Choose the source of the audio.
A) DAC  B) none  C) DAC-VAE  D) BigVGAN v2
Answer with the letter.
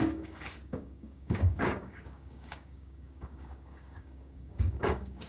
A